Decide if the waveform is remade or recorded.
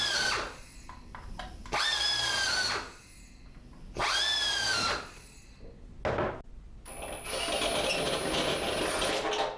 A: recorded